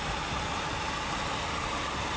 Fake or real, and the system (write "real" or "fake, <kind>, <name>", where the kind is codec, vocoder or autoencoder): real